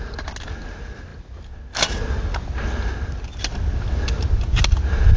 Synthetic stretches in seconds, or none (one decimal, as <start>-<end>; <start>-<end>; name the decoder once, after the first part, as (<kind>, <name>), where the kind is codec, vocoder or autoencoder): none